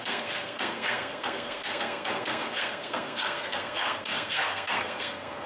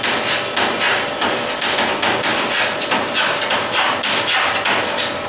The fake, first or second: first